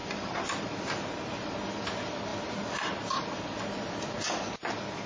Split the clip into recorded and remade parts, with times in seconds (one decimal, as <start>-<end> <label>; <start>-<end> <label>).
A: 0.0-5.1 recorded